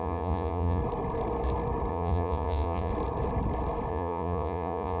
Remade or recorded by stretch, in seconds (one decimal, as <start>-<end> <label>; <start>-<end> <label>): 0.0-0.8 remade; 0.8-1.9 recorded; 1.9-2.9 remade; 2.9-3.9 recorded; 3.9-5.0 remade